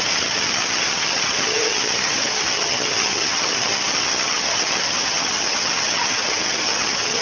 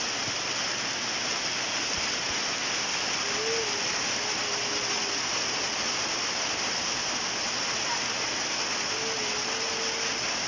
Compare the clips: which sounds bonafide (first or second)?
second